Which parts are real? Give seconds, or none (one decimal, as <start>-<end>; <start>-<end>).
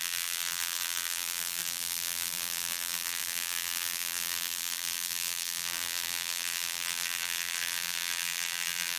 none